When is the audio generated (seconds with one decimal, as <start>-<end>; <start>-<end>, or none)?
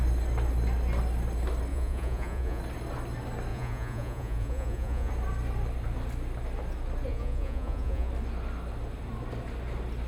1.7-2.6; 3.5-5.1; 7.1-8.1